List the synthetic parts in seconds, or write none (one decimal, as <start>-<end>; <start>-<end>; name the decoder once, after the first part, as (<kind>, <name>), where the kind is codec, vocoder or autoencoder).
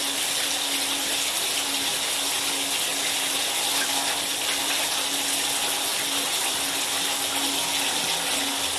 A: none